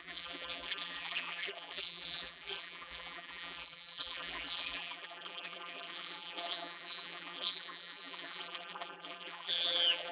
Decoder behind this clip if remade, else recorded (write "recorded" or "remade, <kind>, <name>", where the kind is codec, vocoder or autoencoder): remade, vocoder, BigVGAN v2